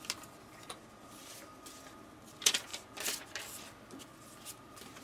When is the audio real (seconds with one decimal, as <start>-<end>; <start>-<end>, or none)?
0.0-5.0